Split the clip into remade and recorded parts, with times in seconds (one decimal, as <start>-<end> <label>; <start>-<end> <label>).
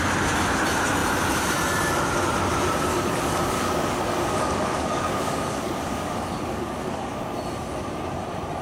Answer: 0.0-2.9 recorded; 2.9-7.3 remade; 7.3-8.6 recorded